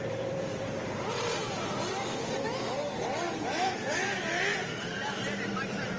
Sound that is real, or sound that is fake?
fake